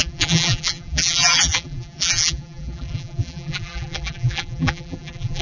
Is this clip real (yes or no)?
no